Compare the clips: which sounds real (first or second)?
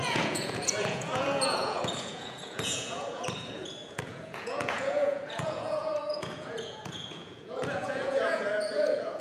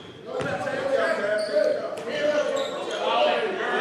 second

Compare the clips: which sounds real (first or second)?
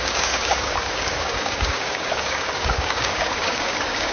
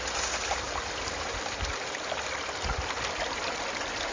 second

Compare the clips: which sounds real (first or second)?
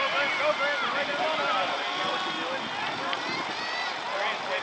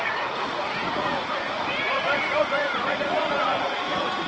first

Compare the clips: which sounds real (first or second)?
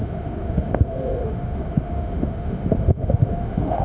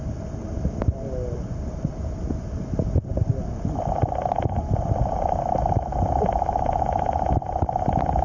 second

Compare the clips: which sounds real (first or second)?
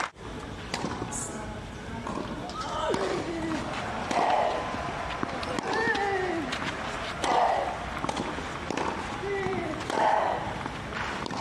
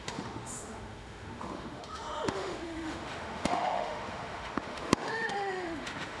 first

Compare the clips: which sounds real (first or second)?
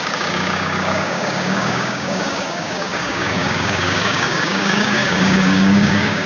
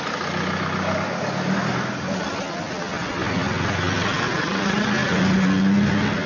second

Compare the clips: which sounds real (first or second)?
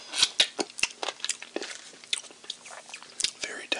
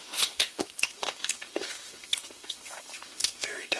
first